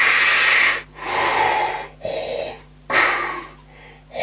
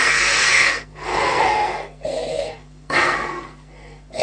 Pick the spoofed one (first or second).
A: second